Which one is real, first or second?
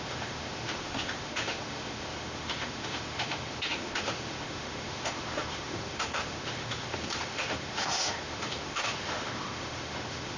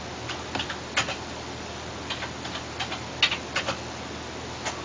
second